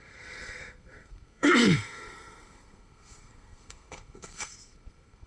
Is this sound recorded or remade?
remade